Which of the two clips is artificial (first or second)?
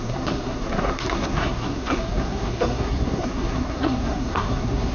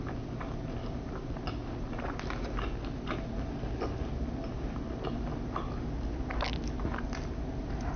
first